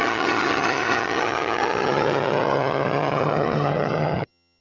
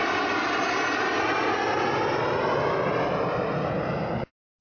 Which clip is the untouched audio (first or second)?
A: second